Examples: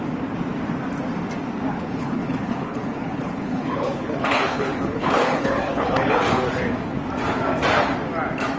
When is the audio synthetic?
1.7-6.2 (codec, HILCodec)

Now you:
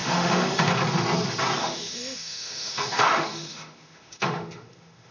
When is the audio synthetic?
0.0-0.7 (autoencoder, DAC-VAE); 1.6-5.1

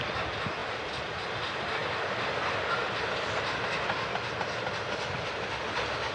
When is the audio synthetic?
none

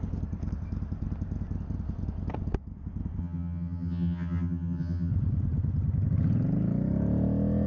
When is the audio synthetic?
3.2-5.1 (vocoder, HiFi-GAN)

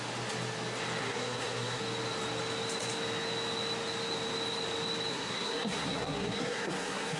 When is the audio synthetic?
1.0-1.8 (codec, SNAC); 5.1-7.2

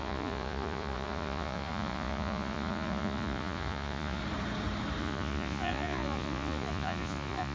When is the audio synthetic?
0.0-4.2 (vocoder, Vocos); 5.0-7.5